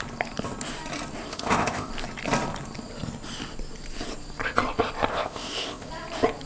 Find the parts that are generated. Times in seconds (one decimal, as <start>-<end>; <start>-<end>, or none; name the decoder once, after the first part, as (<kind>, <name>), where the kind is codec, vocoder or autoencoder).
1.3-1.9 (codec, ZipCodec); 5.1-5.9